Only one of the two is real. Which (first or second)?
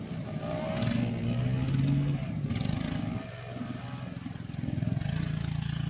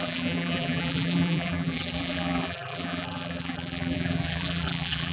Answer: first